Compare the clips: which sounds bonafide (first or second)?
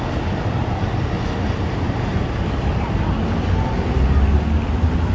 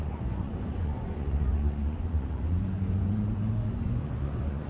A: first